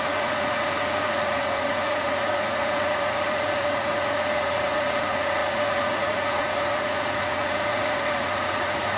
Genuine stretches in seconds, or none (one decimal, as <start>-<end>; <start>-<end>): none